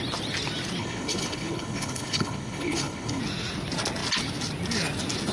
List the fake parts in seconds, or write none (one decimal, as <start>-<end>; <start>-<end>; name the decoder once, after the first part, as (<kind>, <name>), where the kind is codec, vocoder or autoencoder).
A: 0.8-3.2 (codec, HILCodec)